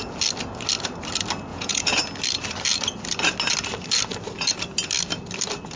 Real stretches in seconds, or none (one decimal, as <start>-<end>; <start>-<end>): 0.0-1.5; 2.0-5.8